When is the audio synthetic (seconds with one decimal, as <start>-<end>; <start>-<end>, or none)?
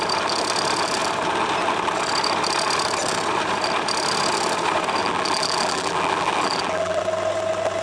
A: 5.0-7.0